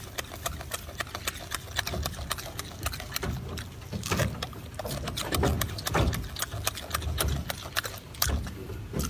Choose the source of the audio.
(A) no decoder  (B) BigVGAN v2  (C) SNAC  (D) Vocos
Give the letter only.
A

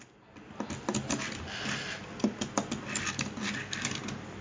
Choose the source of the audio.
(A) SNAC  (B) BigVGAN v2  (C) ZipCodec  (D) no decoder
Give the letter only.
D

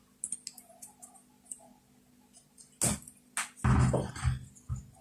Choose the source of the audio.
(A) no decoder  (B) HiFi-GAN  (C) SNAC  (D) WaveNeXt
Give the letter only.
A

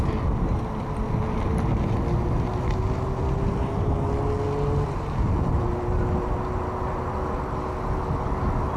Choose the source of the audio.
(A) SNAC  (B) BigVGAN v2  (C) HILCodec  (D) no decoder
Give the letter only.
D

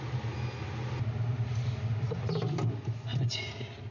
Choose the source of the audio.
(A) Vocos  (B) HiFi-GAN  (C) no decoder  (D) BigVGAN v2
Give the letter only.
C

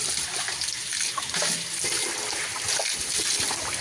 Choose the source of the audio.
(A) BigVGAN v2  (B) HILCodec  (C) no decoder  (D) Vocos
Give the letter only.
C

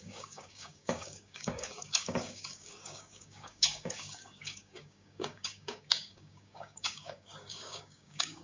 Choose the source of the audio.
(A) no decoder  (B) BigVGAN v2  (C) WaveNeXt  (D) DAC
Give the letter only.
D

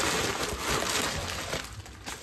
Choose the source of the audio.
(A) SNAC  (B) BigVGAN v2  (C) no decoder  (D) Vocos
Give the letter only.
C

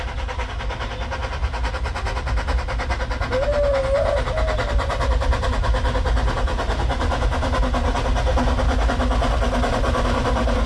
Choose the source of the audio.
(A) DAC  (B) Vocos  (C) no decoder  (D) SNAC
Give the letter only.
C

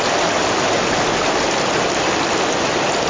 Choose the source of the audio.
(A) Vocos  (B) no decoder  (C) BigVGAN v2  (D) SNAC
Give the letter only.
B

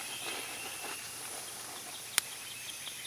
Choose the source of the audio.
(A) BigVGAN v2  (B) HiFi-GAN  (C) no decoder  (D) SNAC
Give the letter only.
C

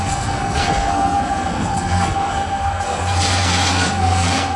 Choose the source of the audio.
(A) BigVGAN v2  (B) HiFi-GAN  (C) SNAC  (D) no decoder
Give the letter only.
C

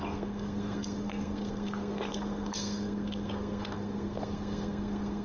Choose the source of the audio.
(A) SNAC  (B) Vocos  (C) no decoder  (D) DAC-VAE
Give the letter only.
A